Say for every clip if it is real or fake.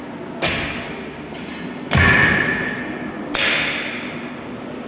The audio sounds real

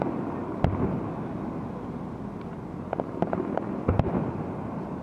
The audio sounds real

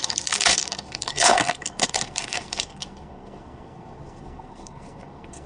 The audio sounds fake